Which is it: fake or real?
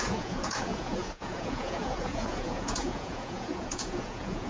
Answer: fake